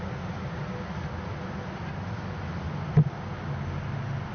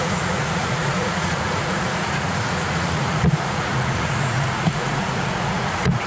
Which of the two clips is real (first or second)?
first